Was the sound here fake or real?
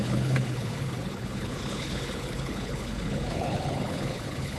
fake